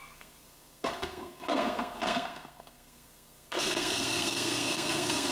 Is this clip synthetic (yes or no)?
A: yes